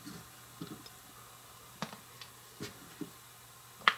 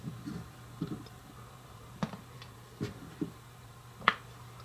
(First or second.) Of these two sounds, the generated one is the second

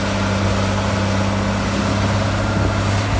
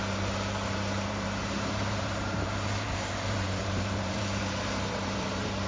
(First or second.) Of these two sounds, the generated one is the second